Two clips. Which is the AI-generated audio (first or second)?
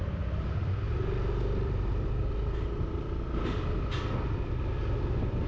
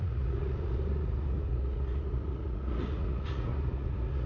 second